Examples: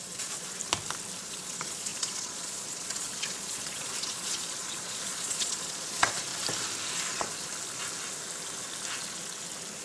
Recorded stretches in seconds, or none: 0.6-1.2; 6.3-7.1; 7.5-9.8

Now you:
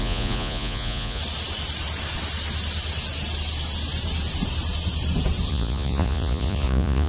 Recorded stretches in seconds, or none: 1.2-5.5

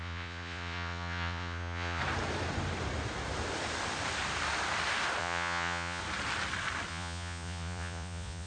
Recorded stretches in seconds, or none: 2.0-5.2; 6.0-6.9

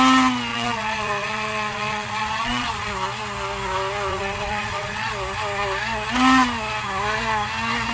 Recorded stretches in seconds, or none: 0.0-0.5; 2.9-4.1; 5.1-7.9

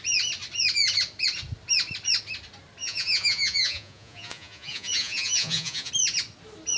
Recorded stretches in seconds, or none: 0.0-2.8; 5.9-6.8

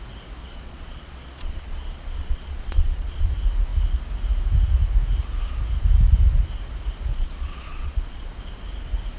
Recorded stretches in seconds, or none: 0.0-0.4; 3.3-7.1; 8.3-9.2

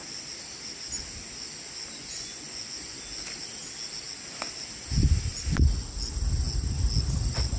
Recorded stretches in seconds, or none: 0.0-2.0; 3.0-7.6